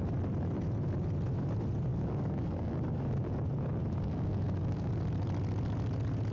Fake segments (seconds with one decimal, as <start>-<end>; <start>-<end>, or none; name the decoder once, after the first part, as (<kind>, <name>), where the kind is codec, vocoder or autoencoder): 1.9-3.3 (codec, DAC); 3.8-4.9